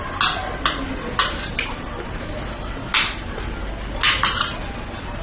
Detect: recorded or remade recorded